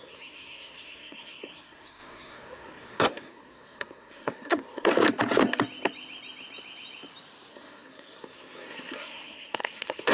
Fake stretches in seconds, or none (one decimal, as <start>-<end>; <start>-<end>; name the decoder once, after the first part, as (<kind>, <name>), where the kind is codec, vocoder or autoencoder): 0.0-4.9 (codec, SNAC); 7.5-10.1